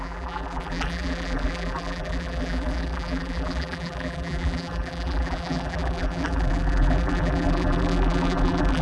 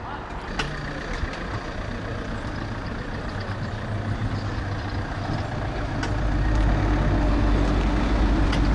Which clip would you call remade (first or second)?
first